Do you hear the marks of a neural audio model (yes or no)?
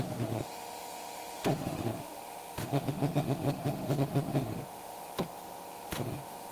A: yes